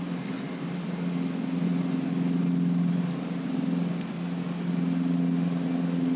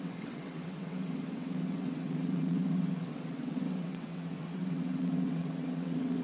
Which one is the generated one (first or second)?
second